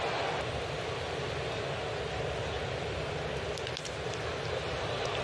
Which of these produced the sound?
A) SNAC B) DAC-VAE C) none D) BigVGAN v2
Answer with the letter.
C